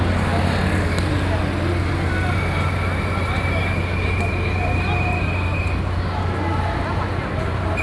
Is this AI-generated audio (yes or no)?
no